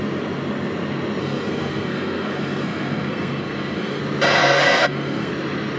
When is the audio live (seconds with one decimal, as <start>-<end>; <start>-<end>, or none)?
0.0-1.2; 4.0-4.4; 5.3-5.8